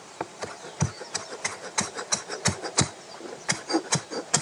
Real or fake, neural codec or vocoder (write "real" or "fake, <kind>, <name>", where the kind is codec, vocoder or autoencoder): fake, vocoder, BigVGAN v2